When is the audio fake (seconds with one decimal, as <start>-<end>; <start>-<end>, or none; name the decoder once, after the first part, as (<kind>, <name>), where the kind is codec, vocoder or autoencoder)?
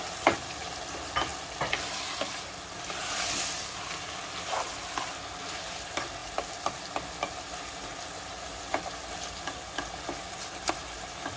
none